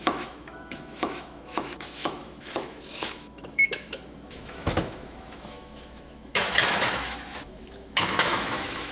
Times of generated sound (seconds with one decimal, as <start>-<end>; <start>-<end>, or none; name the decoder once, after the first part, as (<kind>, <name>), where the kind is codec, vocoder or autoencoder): 0.0-8.9 (autoencoder, DAC-VAE)